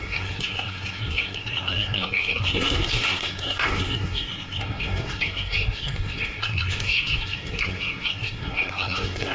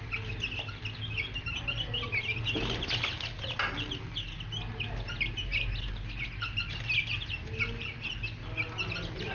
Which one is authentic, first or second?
second